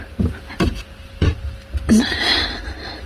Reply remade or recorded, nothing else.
recorded